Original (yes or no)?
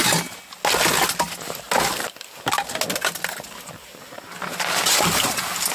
yes